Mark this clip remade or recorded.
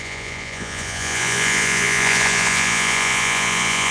remade